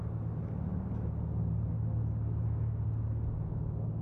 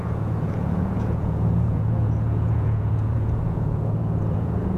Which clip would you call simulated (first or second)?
second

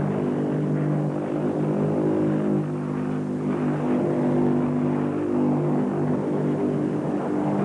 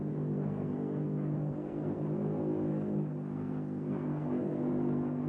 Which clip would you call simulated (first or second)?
second